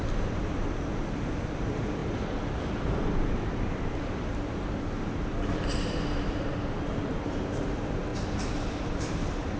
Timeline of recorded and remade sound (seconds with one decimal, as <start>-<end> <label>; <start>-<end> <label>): 0.0-6.5 remade; 6.5-7.1 recorded; 7.1-9.6 remade